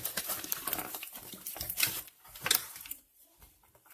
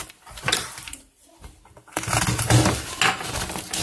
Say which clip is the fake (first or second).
first